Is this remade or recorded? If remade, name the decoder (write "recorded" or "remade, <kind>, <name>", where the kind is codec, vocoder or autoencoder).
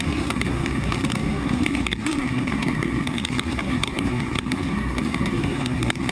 remade, codec, SNAC